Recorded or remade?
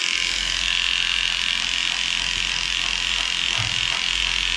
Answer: recorded